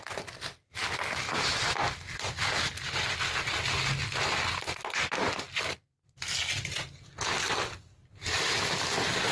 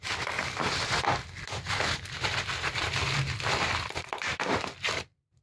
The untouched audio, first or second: first